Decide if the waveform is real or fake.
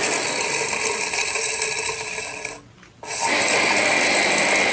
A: real